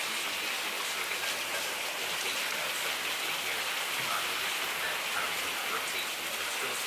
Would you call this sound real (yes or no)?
yes